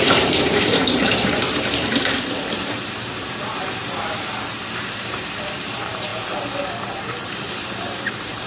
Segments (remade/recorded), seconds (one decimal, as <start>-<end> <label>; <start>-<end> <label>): 0.0-6.1 remade; 6.1-7.0 recorded; 7.0-8.5 remade